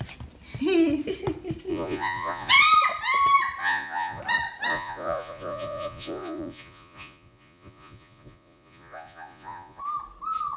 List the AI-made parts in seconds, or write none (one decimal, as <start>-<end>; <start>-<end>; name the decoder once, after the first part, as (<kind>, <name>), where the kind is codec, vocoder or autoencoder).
1.7-2.5 (vocoder, Vocos); 3.6-4.2; 4.7-9.8